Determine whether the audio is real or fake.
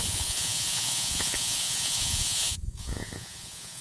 fake